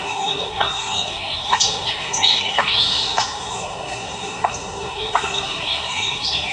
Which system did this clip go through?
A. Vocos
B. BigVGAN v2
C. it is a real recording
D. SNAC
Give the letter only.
D